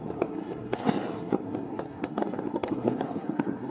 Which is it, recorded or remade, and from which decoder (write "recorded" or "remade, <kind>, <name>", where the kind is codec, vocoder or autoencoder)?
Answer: remade, codec, SNAC